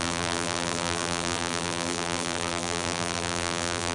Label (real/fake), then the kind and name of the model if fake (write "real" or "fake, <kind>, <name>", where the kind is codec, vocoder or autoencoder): fake, vocoder, BigVGAN v2